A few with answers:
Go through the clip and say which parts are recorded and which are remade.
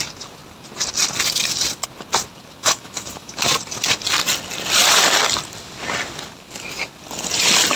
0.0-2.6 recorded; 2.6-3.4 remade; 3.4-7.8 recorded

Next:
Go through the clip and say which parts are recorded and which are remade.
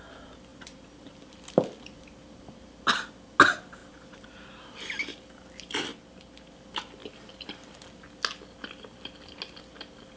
0.0-7.0 recorded; 7.0-7.7 remade; 7.7-10.2 recorded